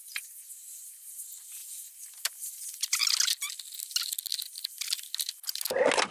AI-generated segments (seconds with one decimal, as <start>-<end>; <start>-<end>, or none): none